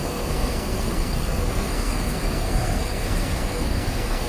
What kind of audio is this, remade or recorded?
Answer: remade